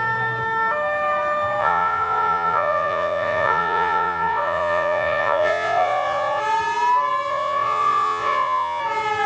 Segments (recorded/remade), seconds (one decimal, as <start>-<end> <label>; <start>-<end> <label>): 0.0-1.6 recorded; 1.6-6.4 remade; 6.4-7.3 recorded; 7.3-8.8 remade; 8.8-9.3 recorded